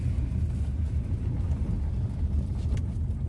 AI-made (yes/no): no